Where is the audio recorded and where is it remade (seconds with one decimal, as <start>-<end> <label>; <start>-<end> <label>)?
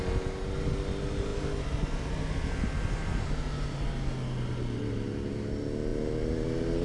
0.0-6.8 recorded